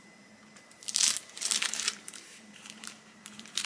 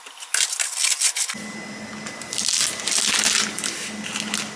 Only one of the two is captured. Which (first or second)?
second